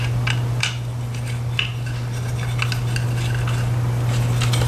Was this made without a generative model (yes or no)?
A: yes